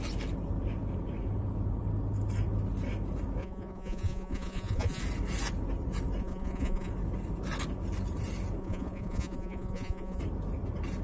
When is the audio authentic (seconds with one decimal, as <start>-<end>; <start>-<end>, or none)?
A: 0.0-3.4; 5.0-6.2; 6.9-8.6; 10.2-11.0